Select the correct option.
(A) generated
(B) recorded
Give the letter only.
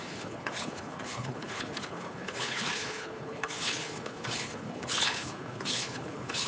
A